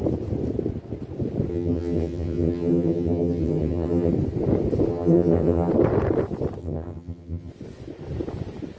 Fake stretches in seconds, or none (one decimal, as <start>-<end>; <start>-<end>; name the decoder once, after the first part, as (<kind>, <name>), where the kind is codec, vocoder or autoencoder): 1.5-4.1 (vocoder, HiFi-GAN); 4.9-5.7; 6.6-7.5